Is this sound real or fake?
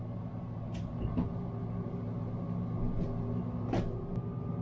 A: real